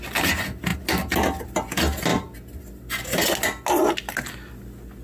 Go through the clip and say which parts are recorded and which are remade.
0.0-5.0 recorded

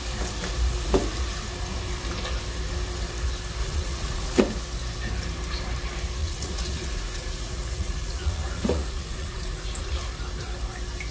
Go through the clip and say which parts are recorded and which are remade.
0.0-3.6 recorded; 3.6-4.4 remade; 4.4-6.2 recorded; 6.2-9.9 remade; 9.9-11.1 recorded

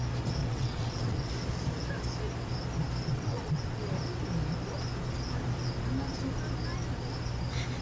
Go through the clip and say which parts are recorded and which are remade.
0.0-0.4 recorded; 0.4-1.3 remade; 1.3-3.1 recorded; 3.1-3.8 remade; 3.8-7.8 recorded